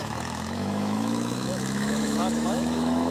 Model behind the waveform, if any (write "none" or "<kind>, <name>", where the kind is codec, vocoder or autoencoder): autoencoder, DAC-VAE